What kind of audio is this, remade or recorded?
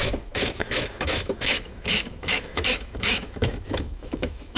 remade